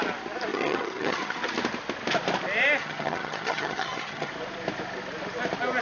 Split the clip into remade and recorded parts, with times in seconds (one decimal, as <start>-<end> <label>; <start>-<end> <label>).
0.0-0.5 recorded; 0.5-1.4 remade; 1.4-2.8 recorded; 2.8-4.3 remade; 4.3-5.8 recorded